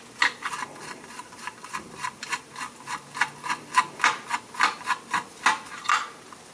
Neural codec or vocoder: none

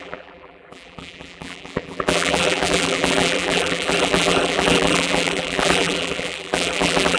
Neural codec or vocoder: vocoder, BigVGAN v2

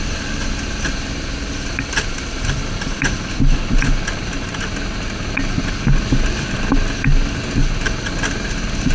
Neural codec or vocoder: none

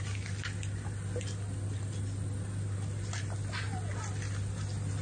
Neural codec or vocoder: none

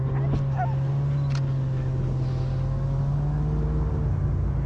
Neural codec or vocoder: none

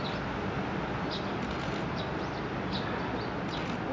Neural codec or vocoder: none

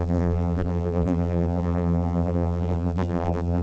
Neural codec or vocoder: vocoder, BigVGAN v2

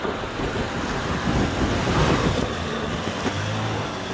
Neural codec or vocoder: none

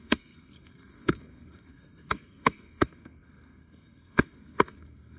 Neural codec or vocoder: codec, SNAC